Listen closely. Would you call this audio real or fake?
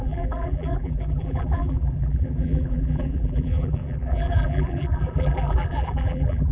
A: fake